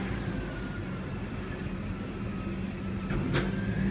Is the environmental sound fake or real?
real